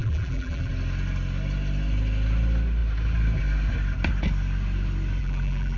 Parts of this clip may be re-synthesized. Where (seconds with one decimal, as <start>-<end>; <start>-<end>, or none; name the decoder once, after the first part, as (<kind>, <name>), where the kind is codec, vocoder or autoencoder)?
0.0-0.7 (vocoder, BigVGAN v2); 5.2-5.8